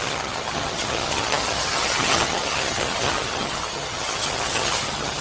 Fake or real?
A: fake